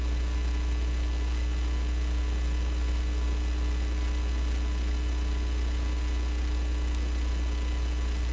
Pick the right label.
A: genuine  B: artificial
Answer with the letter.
A